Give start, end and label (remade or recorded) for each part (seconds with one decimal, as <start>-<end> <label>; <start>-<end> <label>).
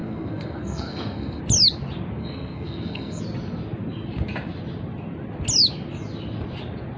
0.0-1.4 remade; 1.4-2.2 recorded; 2.2-3.2 remade; 3.2-7.0 recorded